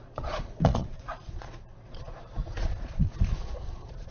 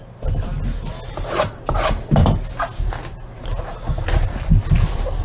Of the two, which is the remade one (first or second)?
first